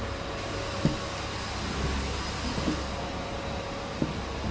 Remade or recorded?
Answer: recorded